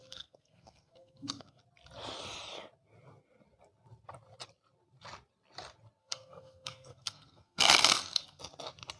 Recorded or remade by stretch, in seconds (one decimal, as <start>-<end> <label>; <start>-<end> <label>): 0.0-1.6 remade; 1.6-6.0 recorded; 6.0-8.4 remade; 8.4-9.0 recorded